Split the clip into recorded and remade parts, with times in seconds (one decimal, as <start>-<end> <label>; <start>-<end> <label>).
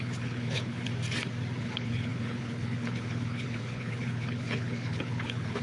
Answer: 0.0-0.9 remade; 0.9-1.6 recorded; 1.6-5.6 remade